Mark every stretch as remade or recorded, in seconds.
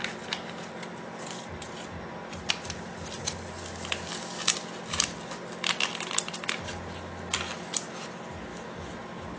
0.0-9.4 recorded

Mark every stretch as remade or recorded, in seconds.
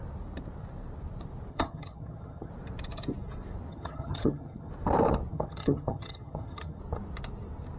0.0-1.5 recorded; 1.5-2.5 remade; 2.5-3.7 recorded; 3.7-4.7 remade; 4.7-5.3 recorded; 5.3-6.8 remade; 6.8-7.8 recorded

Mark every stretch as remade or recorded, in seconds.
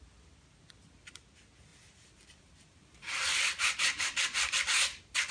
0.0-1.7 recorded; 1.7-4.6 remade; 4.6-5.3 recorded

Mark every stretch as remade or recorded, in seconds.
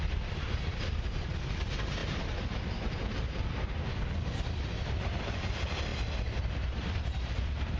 0.0-7.8 remade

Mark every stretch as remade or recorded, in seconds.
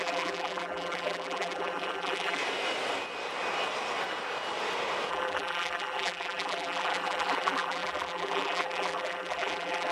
0.0-2.4 remade; 2.4-5.1 recorded; 5.1-9.9 remade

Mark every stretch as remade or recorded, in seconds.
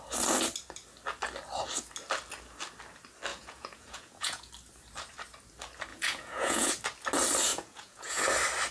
0.0-3.3 recorded; 3.3-4.5 remade; 4.5-5.9 recorded; 5.9-6.7 remade; 6.7-7.5 recorded; 7.5-8.2 remade; 8.2-8.7 recorded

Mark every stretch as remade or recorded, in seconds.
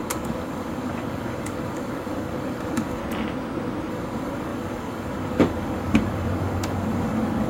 0.0-3.0 remade; 3.0-3.9 recorded; 3.9-7.5 remade